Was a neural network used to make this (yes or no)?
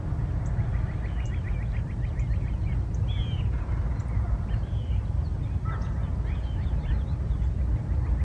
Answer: no